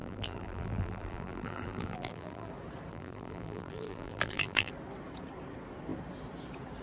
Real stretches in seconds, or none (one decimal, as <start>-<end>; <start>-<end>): 2.5-2.9; 4.7-6.8

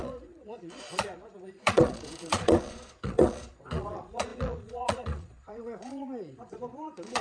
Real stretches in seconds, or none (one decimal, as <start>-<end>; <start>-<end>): none